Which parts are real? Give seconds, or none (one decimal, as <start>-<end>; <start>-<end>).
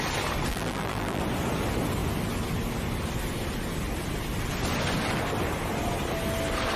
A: 0.0-0.5; 1.2-6.8